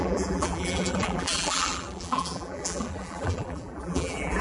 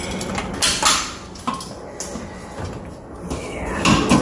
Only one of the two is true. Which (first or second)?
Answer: second